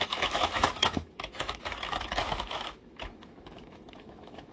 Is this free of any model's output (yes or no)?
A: no